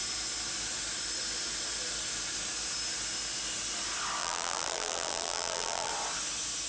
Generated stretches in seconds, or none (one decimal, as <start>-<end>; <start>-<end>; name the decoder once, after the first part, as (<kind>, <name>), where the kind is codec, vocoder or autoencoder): 4.2-5.9 (vocoder, BigVGAN v2)